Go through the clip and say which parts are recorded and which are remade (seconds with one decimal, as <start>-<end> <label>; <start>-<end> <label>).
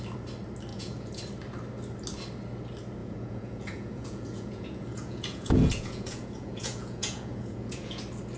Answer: 0.0-0.7 recorded; 0.7-1.2 remade; 1.2-3.0 recorded; 3.0-8.0 remade; 8.0-8.4 recorded